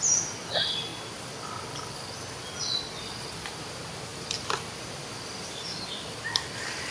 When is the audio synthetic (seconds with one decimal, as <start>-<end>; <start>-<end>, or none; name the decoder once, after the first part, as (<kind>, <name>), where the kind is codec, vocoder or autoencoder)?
none